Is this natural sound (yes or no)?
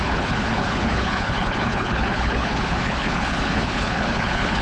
no